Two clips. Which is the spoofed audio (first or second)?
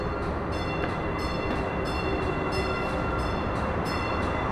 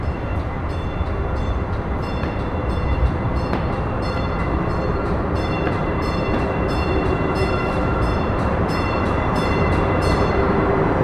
second